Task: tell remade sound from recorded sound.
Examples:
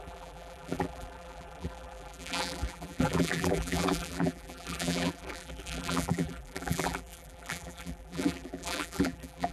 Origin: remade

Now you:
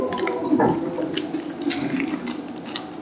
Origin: recorded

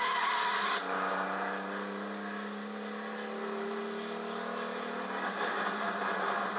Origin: recorded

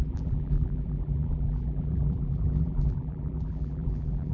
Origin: remade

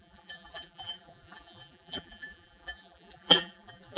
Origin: remade